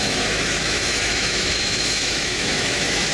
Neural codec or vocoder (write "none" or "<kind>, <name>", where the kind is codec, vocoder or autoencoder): autoencoder, DAC-VAE